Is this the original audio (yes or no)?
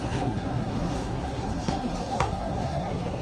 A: no